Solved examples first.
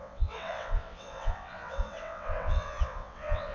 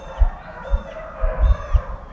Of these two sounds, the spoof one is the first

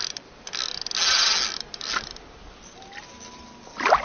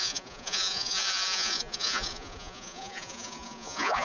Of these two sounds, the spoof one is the second